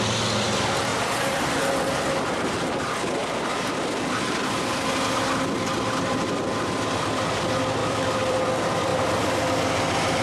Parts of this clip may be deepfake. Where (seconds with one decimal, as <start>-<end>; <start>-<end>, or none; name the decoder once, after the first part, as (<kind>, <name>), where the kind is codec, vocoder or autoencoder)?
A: 0.9-1.5 (vocoder, BigVGAN v2); 3.2-4.5; 7.8-8.4